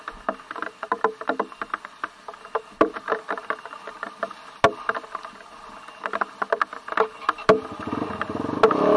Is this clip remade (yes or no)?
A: no